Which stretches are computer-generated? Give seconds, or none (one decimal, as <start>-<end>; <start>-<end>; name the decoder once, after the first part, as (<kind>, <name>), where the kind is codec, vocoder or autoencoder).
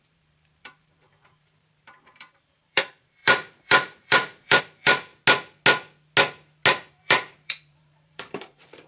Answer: 0.0-5.1 (vocoder, BigVGAN v2); 6.9-8.9